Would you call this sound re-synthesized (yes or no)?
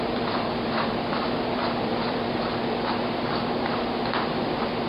yes